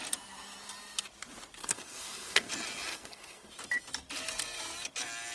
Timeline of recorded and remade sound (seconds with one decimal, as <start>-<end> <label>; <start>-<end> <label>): 0.0-1.6 recorded; 1.6-2.5 remade; 2.5-2.9 recorded; 2.9-3.5 remade; 3.5-5.3 recorded